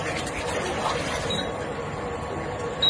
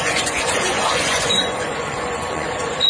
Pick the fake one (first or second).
second